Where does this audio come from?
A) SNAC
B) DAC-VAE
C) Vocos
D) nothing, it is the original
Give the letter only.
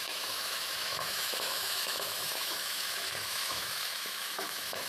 B